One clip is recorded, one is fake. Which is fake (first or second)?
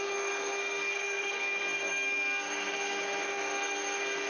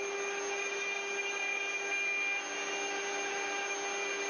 first